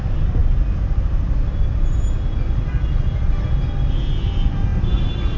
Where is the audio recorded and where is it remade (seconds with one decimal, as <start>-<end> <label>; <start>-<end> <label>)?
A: 0.0-5.4 recorded